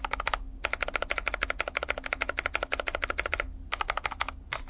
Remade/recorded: recorded